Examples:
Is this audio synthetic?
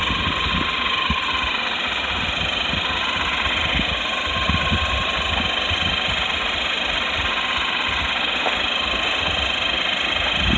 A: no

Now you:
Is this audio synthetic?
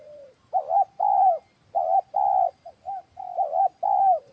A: no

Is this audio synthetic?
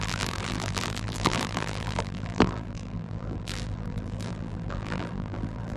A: yes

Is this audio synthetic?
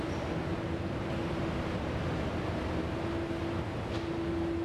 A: no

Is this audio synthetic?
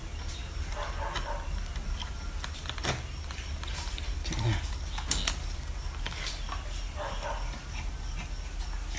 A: no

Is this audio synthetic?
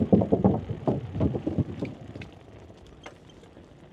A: no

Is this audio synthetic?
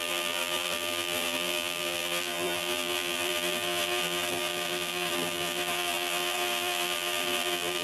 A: yes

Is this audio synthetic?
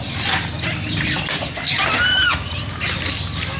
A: no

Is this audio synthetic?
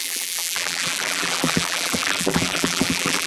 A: yes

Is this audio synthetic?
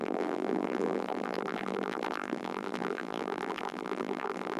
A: yes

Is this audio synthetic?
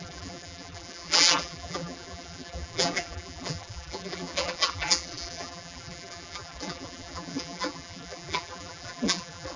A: yes